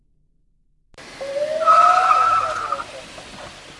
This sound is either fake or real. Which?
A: real